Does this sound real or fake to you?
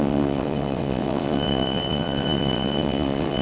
fake